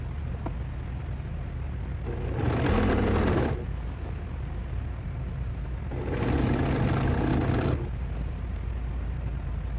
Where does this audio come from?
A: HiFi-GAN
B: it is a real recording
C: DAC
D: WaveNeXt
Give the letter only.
B